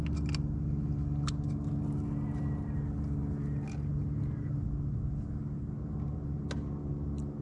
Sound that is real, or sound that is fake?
real